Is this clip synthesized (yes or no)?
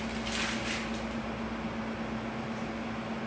no